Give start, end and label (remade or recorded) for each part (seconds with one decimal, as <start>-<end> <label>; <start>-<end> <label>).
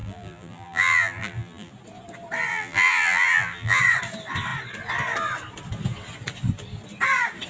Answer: 0.0-1.7 remade; 1.7-2.5 recorded; 2.5-3.8 remade; 3.8-7.5 recorded